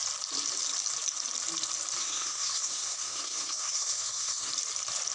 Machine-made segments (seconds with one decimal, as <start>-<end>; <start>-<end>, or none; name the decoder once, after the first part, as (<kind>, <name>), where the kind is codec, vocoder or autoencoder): 2.0-4.5 (codec, SNAC)